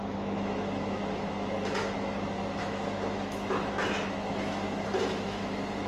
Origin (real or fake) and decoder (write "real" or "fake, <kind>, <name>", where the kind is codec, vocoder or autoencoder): fake, autoencoder, DAC-VAE